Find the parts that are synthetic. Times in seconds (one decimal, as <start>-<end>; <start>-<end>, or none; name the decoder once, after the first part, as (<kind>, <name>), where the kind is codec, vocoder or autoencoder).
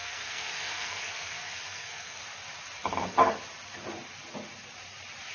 0.0-2.2 (codec, SNAC)